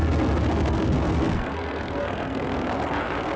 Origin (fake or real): fake